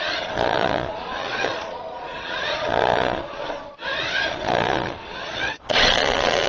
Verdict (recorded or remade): remade